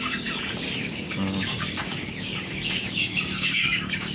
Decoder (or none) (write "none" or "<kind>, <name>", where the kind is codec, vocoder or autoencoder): codec, DAC